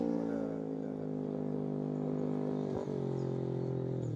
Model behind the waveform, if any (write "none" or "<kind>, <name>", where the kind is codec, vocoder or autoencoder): none